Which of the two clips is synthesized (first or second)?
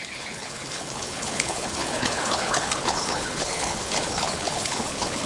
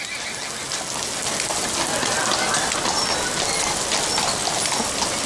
first